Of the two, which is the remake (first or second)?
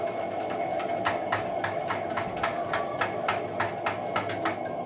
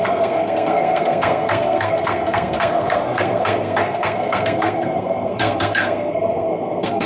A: second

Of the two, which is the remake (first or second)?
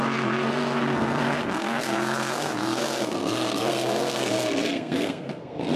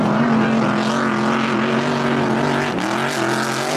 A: first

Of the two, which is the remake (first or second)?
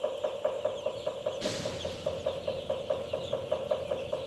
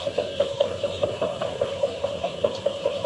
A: second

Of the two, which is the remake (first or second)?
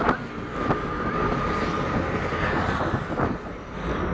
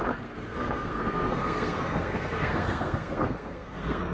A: second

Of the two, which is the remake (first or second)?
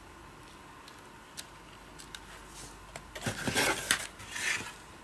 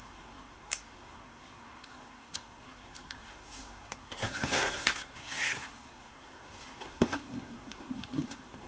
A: second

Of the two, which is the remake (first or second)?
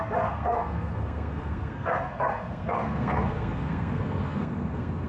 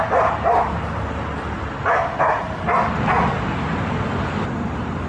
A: first